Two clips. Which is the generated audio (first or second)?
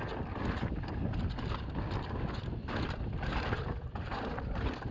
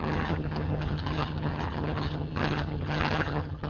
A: second